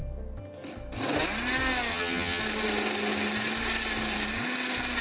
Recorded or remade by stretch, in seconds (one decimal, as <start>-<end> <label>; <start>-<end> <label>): 0.0-1.9 recorded; 1.9-2.4 remade; 2.4-5.0 recorded